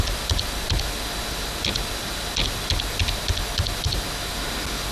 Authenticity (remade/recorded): recorded